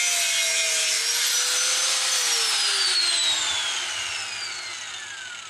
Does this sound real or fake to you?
real